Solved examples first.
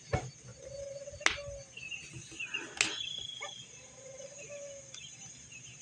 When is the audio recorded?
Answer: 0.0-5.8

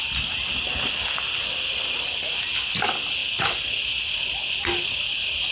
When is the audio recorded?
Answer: 0.0-5.5

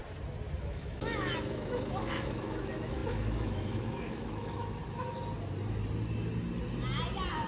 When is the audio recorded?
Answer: 0.0-0.6; 4.8-7.5

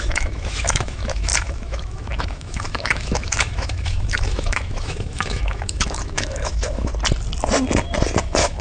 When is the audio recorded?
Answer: 6.9-8.2

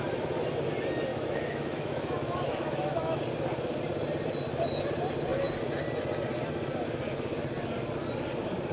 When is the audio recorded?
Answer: 0.0-1.1; 3.2-8.7

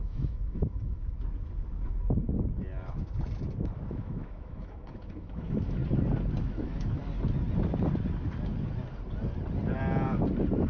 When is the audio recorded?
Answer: 1.0-3.9; 5.8-6.4; 7.0-10.7